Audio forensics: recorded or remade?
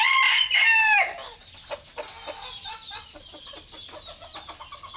recorded